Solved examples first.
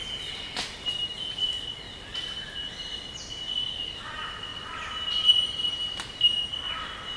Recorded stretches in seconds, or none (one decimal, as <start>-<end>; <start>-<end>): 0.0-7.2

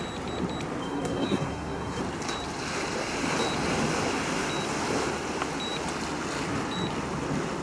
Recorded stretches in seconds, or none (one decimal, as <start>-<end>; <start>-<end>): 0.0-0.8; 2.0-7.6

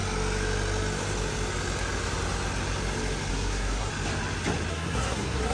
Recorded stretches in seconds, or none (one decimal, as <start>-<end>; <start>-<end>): 0.0-3.3; 3.9-4.7

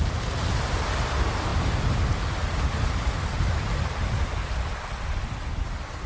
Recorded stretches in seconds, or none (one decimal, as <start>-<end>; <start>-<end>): 0.0-6.1